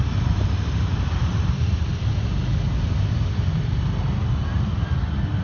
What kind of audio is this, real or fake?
real